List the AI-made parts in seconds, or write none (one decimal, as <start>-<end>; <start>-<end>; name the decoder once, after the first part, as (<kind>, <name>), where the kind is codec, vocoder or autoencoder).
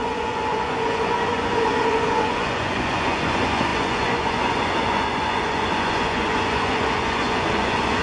0.0-8.0 (vocoder, Vocos)